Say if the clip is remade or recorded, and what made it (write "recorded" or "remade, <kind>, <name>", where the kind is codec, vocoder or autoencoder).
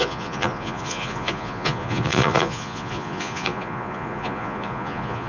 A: remade, vocoder, Vocos